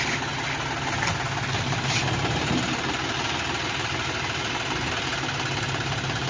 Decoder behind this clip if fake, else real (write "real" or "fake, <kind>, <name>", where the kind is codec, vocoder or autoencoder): real